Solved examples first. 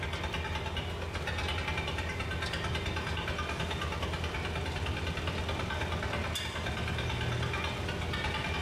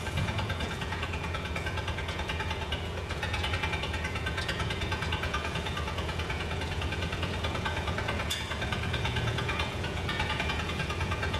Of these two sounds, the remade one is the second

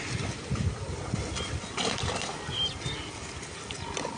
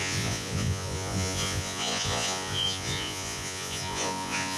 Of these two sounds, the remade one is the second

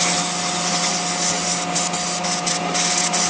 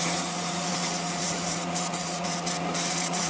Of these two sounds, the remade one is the second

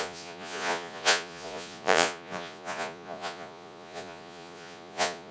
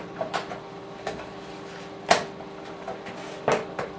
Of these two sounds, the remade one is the first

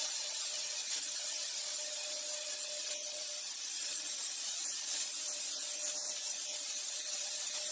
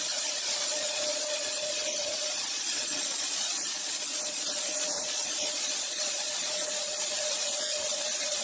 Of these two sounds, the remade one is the second